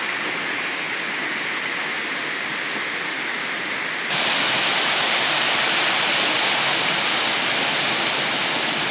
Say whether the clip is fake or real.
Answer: real